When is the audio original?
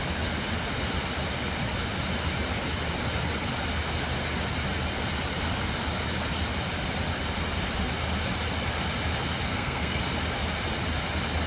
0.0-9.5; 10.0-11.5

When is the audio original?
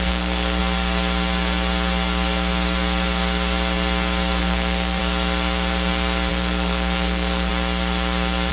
0.6-4.4; 5.0-6.3; 7.5-8.5